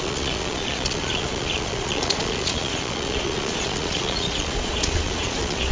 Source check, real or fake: fake